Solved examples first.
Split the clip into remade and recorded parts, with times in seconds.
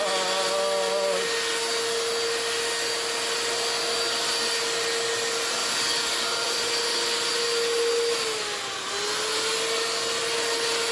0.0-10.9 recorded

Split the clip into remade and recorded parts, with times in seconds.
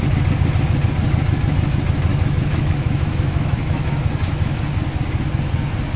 0.0-2.1 recorded; 2.1-4.6 remade; 4.6-6.0 recorded